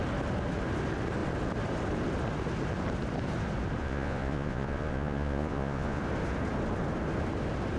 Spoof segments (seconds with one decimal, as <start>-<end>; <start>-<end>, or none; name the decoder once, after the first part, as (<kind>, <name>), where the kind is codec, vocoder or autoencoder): 3.8-6.0 (vocoder, Vocos)